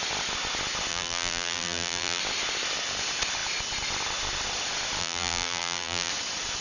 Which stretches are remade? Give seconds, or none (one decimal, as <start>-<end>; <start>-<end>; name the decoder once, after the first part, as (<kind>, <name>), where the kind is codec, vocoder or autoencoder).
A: 0.9-2.2 (vocoder, BigVGAN v2); 5.0-6.1